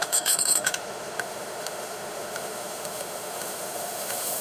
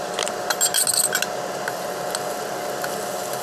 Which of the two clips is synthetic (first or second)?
first